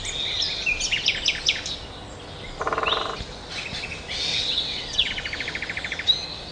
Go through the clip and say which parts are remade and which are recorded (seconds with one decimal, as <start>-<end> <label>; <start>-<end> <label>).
0.0-4.3 recorded; 4.3-5.1 remade; 5.1-6.5 recorded